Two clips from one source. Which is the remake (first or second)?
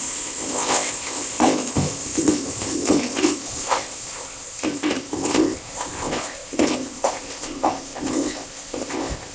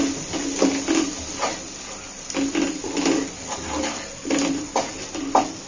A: first